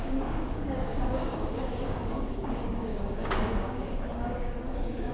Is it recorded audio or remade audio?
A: remade